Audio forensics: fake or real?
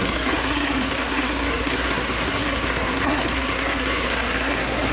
fake